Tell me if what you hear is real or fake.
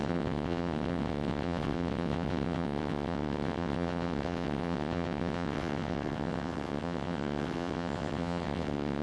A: fake